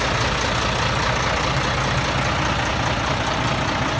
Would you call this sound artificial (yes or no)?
no